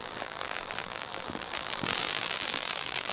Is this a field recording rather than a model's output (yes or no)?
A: no